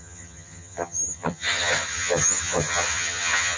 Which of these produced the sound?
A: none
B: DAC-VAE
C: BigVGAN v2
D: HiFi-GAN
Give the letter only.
D